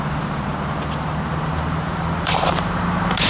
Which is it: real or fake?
fake